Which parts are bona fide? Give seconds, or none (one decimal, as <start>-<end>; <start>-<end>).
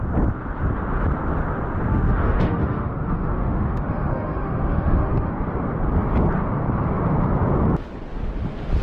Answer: 0.0-1.9; 5.3-8.8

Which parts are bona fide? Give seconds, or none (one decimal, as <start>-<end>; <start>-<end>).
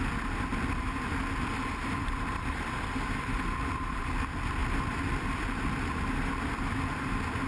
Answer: 0.0-0.5; 4.0-4.6; 5.7-7.5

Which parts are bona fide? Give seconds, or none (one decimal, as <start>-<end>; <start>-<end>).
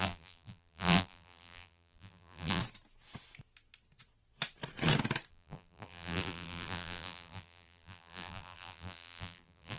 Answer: 2.6-5.3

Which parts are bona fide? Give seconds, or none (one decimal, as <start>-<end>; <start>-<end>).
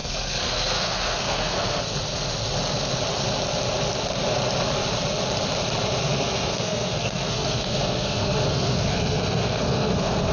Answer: 1.8-6.0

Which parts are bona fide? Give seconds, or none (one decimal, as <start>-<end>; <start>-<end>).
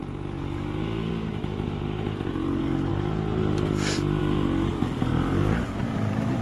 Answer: 0.0-2.9; 4.2-4.7; 5.8-6.4